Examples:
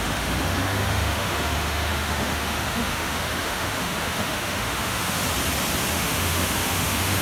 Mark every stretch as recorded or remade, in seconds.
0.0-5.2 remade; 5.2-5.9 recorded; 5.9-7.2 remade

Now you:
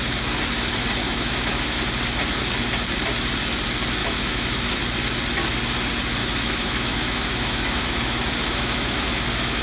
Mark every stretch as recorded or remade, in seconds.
0.0-1.0 recorded; 1.0-1.8 remade; 1.8-4.0 recorded; 4.0-4.8 remade; 4.8-6.2 recorded; 6.2-9.6 remade